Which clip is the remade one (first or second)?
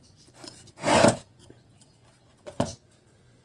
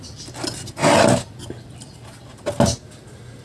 first